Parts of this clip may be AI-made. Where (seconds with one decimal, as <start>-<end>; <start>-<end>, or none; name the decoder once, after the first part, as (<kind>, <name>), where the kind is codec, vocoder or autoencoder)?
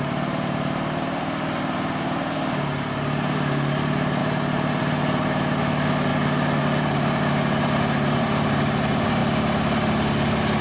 0.0-6.1 (vocoder, BigVGAN v2); 6.6-9.2